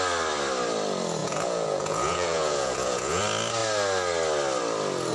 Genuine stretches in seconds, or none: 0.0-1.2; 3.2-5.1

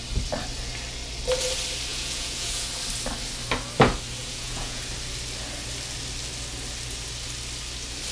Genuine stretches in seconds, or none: 0.0-1.9; 2.7-4.2; 4.8-8.1

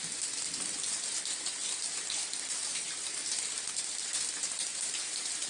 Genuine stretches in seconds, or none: 0.0-5.5

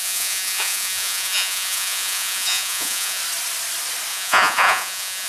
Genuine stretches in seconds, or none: 3.2-4.1